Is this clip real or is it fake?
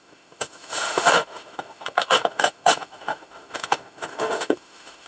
fake